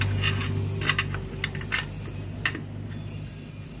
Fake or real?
real